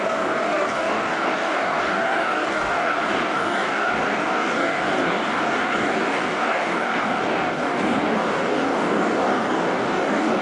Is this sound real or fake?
fake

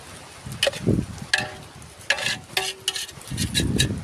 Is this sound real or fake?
real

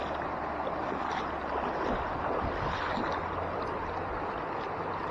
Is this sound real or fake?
real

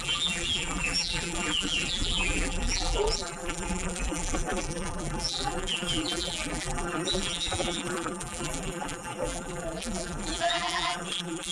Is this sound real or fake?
fake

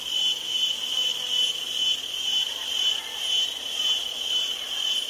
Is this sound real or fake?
fake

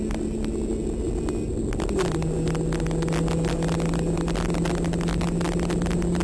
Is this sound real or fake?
real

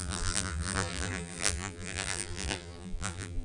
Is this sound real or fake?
fake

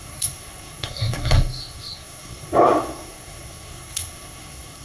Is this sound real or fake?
fake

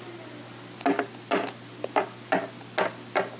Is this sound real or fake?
real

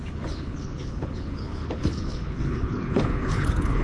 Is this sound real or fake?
fake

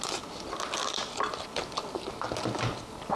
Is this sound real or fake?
real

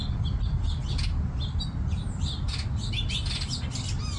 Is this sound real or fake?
real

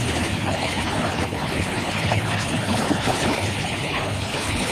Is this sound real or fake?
fake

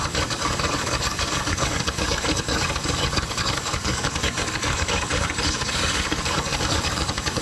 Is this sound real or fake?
fake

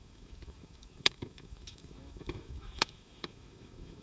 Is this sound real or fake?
fake